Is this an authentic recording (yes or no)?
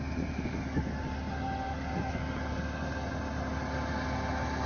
yes